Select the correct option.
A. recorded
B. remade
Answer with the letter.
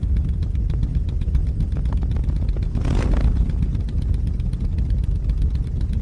A